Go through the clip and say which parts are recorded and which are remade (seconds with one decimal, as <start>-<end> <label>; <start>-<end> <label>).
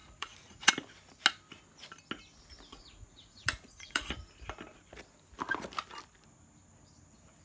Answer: 0.0-0.7 remade; 0.7-2.7 recorded; 2.7-4.1 remade; 4.1-7.4 recorded